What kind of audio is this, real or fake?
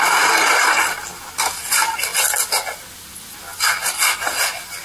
real